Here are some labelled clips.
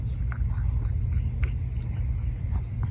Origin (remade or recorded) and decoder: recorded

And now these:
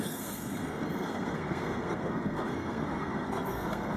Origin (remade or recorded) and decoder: remade, codec, SNAC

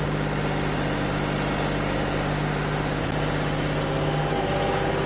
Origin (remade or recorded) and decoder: recorded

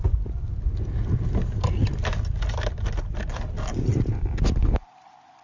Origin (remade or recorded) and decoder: recorded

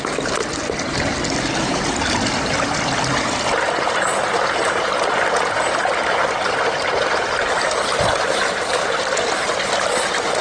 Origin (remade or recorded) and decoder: recorded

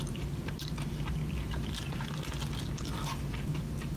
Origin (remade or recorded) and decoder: recorded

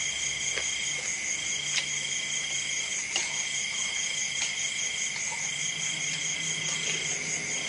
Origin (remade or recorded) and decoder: recorded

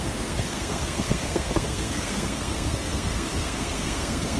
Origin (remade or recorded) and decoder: remade, codec, SNAC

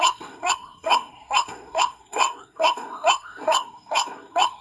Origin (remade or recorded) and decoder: remade, codec, SNAC